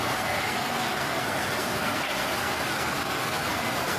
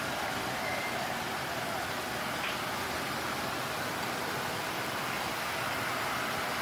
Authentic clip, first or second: second